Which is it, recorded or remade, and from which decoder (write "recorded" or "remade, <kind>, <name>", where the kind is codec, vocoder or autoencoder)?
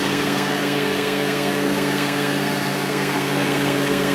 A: remade, codec, SNAC